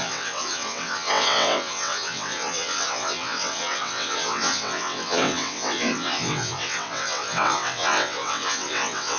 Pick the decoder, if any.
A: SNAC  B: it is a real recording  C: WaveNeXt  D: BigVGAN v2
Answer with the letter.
C